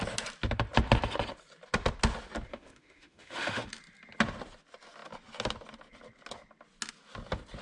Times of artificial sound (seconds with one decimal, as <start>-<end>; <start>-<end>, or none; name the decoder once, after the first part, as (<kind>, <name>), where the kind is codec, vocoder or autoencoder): 2.5-3.7 (autoencoder, DAC-VAE)